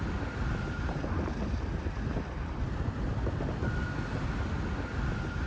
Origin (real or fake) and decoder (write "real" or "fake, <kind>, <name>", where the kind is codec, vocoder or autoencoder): real